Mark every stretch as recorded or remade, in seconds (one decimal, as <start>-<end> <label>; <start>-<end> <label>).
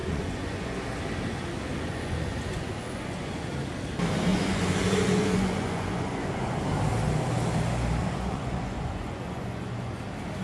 0.0-0.8 remade; 0.8-1.7 recorded; 1.7-3.5 remade; 3.5-4.3 recorded; 4.3-6.6 remade; 6.6-8.0 recorded; 8.0-10.0 remade; 10.0-10.4 recorded